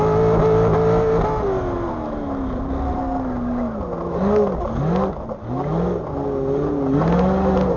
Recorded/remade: recorded